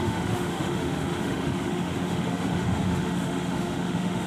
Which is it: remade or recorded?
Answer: remade